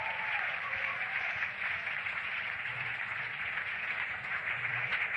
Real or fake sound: fake